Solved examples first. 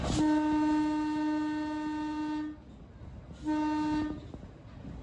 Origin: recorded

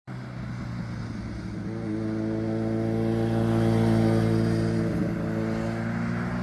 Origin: recorded